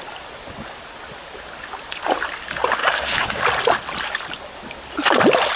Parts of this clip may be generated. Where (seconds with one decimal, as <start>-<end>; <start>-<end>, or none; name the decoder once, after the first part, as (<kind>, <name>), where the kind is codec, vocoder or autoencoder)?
2.8-3.4 (codec, DAC)